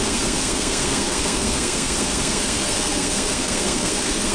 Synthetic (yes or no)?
yes